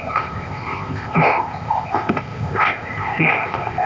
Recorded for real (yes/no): no